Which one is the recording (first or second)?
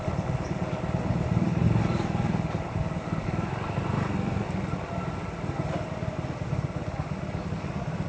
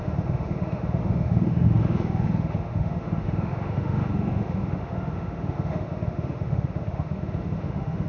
first